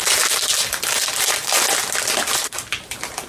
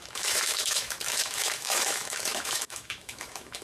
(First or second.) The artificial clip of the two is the second